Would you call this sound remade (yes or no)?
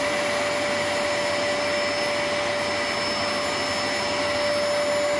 no